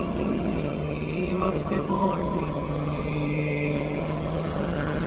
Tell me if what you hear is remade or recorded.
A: remade